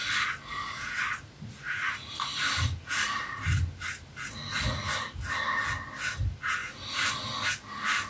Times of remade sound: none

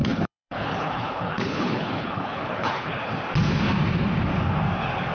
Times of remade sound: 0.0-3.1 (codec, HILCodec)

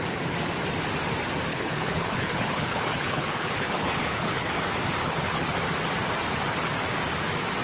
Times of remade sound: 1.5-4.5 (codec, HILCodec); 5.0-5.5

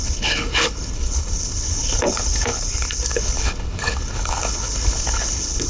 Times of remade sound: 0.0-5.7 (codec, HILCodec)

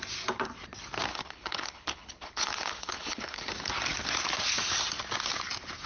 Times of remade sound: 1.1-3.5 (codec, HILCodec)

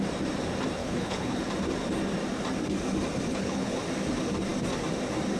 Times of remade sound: 0.8-1.4 (codec, HILCodec); 3.3-3.8